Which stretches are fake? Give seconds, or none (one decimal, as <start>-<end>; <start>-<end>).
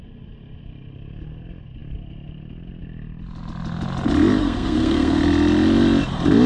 4.4-5.2